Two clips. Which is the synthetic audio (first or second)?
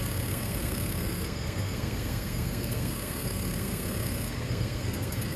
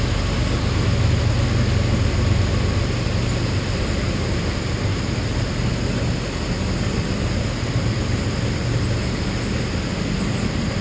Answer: first